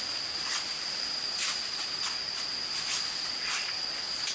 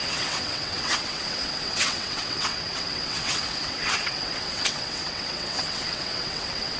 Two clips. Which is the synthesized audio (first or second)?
second